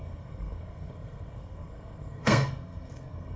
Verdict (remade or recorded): remade